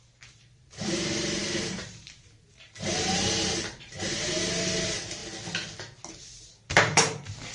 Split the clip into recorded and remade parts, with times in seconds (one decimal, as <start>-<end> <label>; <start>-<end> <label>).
0.0-5.2 remade; 5.2-6.1 recorded; 6.1-7.5 remade